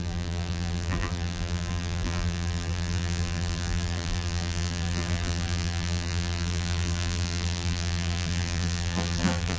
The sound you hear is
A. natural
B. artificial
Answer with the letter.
B